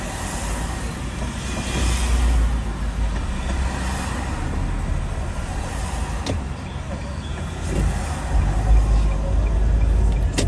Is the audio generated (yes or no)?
no